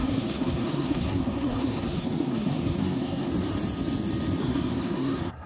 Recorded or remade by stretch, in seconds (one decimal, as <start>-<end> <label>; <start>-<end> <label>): 0.0-3.3 remade; 3.3-4.4 recorded; 4.4-5.5 remade